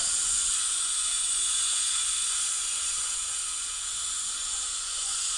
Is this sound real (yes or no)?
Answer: no